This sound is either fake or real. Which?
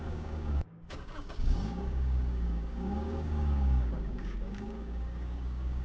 fake